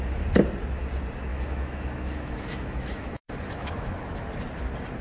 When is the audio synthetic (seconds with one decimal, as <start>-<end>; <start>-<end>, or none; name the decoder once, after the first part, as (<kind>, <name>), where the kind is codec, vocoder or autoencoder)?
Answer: 1.3-4.3 (autoencoder, DAC-VAE)